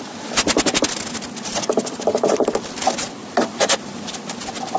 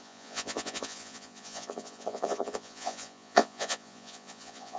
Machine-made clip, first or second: second